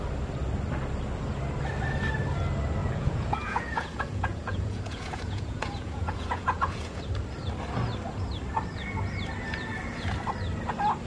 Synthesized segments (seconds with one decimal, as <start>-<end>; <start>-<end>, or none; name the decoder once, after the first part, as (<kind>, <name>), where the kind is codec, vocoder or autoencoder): 2.8-7.0 (vocoder, Vocos)